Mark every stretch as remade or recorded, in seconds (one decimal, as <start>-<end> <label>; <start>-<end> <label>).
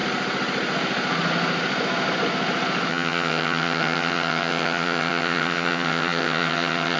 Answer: 0.0-2.9 recorded; 2.9-7.0 remade